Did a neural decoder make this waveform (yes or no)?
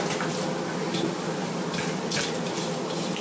no